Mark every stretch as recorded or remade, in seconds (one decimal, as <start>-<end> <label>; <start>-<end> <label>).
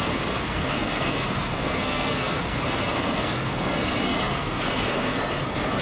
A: 0.0-5.8 remade